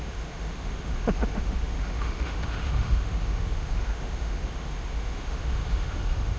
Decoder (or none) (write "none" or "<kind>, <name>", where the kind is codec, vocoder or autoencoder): autoencoder, DAC-VAE